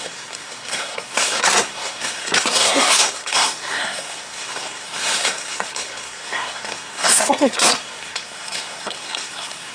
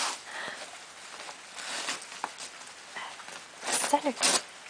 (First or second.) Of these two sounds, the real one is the second